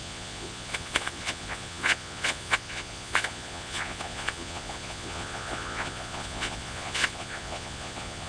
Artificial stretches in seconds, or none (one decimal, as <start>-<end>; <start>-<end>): 0.0-8.3

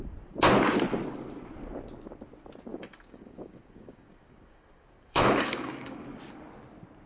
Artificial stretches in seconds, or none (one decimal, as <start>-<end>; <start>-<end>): 2.7-6.0

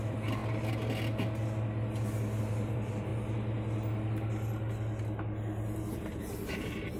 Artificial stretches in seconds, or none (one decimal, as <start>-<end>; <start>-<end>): 0.0-0.4; 2.4-3.1; 6.5-7.0

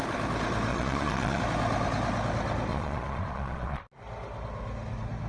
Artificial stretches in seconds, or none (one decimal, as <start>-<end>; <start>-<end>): 0.7-1.4; 2.7-3.8

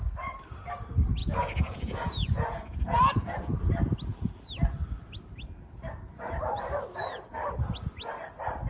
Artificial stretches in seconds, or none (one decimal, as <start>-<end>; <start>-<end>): 1.2-3.6